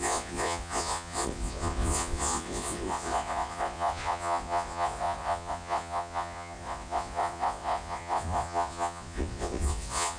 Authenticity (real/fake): fake